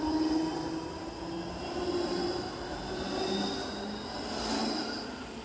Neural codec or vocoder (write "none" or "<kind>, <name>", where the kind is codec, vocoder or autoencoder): none